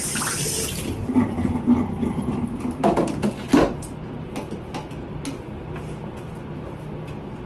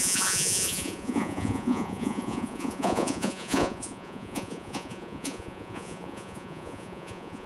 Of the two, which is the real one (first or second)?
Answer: first